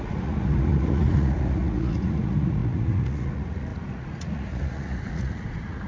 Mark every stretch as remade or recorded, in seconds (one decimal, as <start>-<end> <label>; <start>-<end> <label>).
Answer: 0.0-5.9 remade